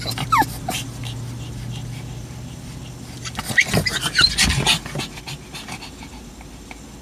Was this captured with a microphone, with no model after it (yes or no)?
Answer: yes